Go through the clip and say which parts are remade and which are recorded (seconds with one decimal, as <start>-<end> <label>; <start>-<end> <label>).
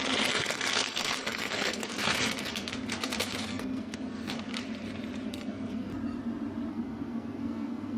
0.0-4.6 remade; 4.6-5.3 recorded; 5.3-5.9 remade; 5.9-6.7 recorded; 6.7-8.0 remade